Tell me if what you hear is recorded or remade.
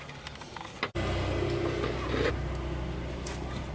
recorded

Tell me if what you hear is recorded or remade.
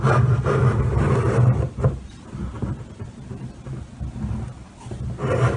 recorded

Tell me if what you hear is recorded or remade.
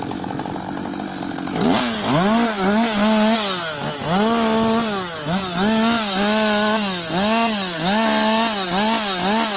recorded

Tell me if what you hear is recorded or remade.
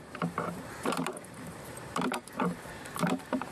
remade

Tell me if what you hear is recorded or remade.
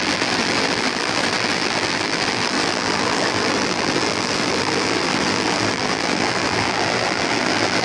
remade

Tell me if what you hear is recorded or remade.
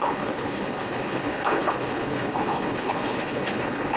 remade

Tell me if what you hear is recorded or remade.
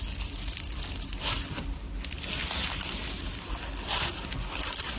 recorded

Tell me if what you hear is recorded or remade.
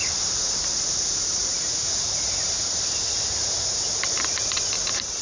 remade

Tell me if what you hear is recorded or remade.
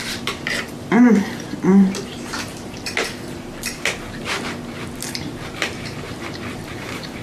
remade